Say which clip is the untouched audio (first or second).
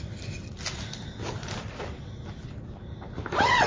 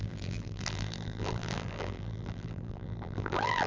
first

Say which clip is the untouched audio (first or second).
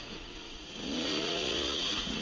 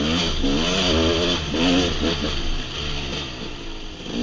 second